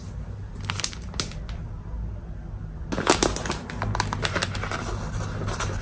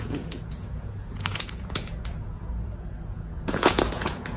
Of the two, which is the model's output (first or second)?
second